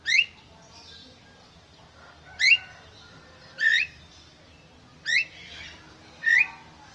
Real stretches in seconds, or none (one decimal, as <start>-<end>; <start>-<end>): 0.0-6.9